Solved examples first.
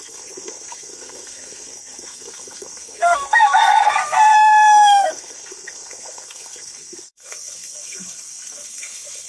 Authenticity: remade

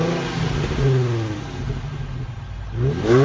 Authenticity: recorded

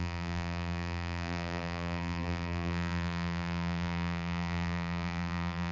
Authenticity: remade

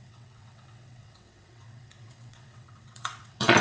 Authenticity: remade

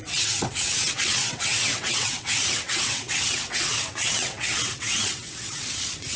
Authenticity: remade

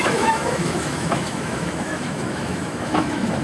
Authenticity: remade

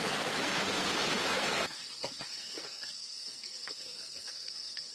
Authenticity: remade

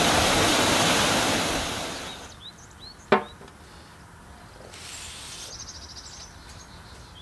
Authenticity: recorded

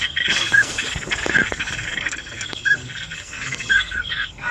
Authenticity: remade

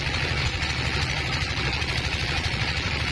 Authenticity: remade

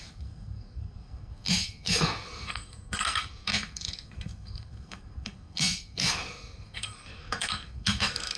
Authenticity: remade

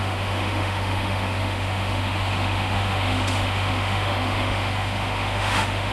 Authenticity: remade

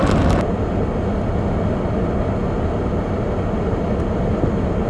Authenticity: recorded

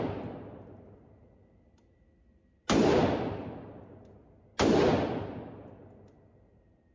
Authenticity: recorded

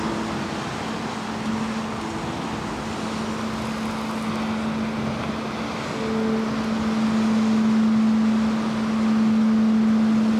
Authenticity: recorded